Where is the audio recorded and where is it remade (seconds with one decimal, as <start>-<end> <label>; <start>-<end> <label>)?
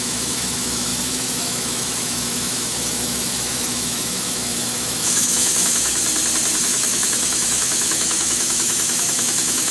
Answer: 0.0-6.0 remade; 6.0-6.6 recorded; 6.6-9.7 remade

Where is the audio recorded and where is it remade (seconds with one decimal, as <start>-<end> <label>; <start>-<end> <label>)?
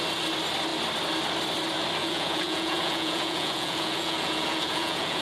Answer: 0.0-2.0 recorded; 2.0-5.2 remade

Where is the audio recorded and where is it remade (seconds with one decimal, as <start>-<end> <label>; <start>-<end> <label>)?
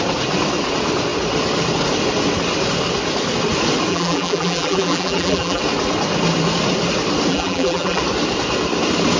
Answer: 0.0-3.9 recorded; 3.9-5.6 remade; 5.6-7.3 recorded; 7.3-8.0 remade; 8.0-9.2 recorded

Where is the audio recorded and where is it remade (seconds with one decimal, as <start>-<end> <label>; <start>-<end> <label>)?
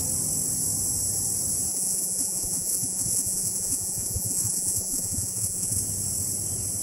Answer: 0.0-1.7 recorded; 1.7-5.8 remade; 5.8-6.8 recorded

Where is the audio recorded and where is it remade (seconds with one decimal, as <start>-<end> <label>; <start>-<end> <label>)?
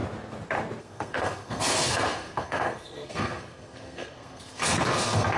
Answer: 0.0-0.8 recorded; 0.8-5.4 remade